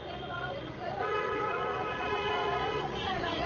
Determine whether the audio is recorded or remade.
remade